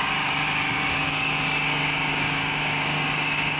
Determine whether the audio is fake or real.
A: fake